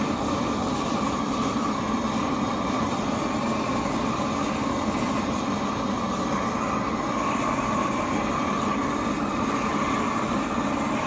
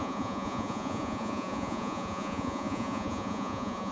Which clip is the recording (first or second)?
first